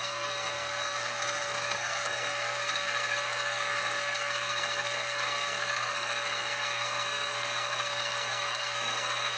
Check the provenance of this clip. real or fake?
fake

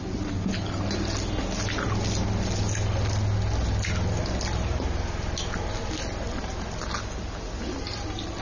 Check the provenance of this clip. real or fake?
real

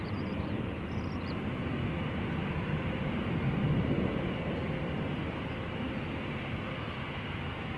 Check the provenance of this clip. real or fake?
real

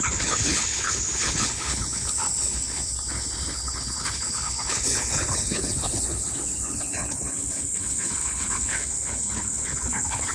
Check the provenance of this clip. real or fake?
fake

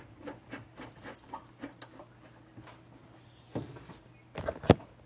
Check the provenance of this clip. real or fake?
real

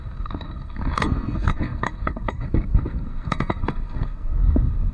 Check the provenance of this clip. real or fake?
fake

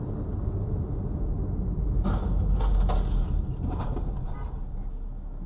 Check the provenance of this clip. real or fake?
real